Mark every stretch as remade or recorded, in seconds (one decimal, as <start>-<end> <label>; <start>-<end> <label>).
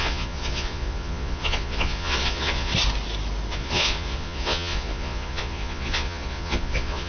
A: 0.0-2.7 remade; 2.7-3.5 recorded; 3.5-7.1 remade